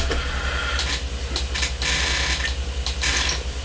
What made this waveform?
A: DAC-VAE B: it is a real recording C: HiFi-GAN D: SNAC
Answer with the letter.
B